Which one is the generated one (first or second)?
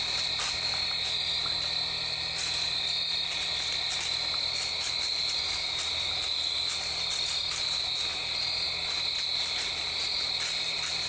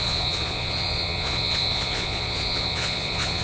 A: second